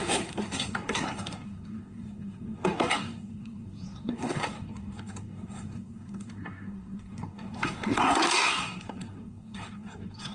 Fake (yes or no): yes